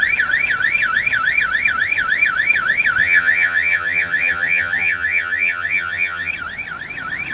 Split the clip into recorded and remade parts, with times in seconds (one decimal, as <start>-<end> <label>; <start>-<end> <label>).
0.0-3.0 recorded; 3.0-6.3 remade; 6.3-7.3 recorded